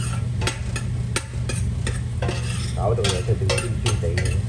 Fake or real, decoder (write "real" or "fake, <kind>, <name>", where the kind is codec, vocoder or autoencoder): real